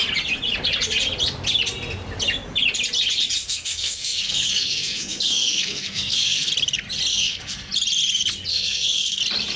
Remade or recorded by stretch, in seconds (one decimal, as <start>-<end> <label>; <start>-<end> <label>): 0.0-3.4 recorded; 3.4-6.5 remade; 6.5-7.1 recorded; 7.1-7.7 remade; 7.7-8.5 recorded; 8.5-9.2 remade; 9.2-9.6 recorded